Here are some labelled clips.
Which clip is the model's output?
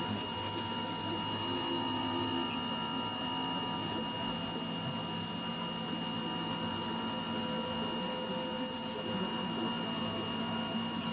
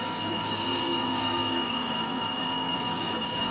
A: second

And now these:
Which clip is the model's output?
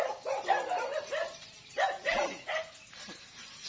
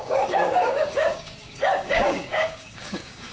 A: second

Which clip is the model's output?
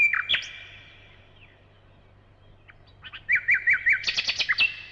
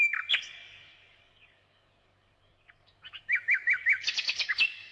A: second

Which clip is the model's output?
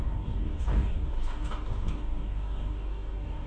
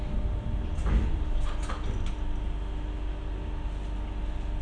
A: first